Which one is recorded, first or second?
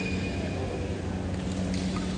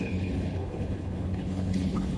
first